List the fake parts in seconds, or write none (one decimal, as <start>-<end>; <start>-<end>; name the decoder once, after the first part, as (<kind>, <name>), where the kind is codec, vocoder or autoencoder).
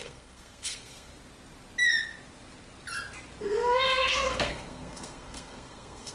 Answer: 0.0-1.1 (codec, SNAC); 3.4-6.1